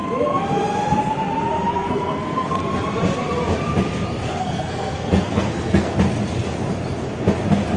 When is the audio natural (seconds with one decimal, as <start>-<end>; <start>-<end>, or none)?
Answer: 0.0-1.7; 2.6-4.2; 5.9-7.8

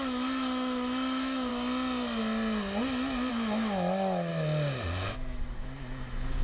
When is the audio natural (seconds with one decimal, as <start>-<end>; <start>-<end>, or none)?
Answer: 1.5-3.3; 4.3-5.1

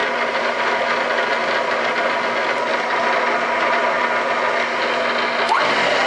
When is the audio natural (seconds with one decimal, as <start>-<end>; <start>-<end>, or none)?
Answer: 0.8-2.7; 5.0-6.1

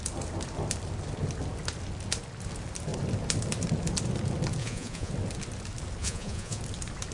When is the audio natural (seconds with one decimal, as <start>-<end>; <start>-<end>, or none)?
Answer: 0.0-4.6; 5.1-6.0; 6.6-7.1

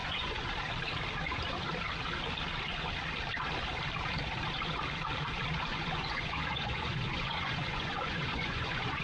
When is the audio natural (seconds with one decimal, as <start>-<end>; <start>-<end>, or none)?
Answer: 0.5-5.7

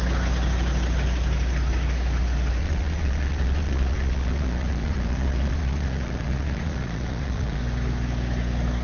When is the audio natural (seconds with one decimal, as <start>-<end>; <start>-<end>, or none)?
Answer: 0.0-2.6; 7.6-8.8